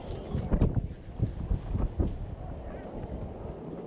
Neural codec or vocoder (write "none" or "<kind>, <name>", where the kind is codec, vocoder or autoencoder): none